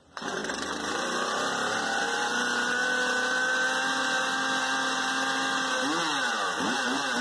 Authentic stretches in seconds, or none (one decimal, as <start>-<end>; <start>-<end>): 2.8-7.2